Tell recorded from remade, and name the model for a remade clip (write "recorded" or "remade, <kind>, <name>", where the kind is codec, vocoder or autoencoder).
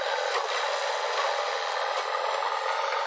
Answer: recorded